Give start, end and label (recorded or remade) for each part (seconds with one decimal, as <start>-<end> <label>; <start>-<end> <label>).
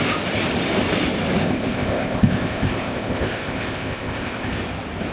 0.0-1.4 recorded; 1.4-4.5 remade; 4.5-5.1 recorded